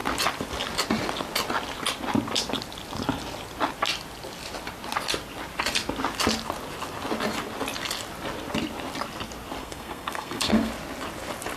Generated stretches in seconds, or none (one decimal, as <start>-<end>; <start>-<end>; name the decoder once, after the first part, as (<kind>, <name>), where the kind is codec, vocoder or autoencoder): 9.6-10.7 (codec, SNAC)